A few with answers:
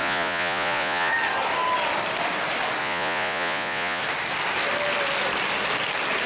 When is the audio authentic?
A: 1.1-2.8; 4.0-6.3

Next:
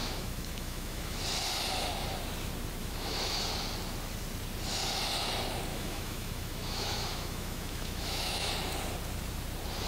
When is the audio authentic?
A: 1.2-2.8; 3.4-5.7; 8.5-9.9

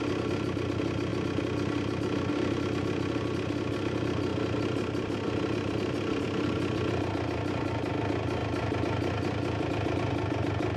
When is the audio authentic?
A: 0.0-4.3; 7.9-8.4

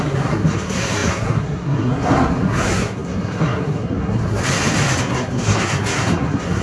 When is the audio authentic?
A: 4.4-5.0